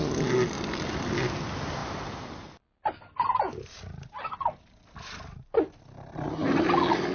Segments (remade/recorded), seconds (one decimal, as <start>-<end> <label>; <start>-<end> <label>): 0.0-7.1 recorded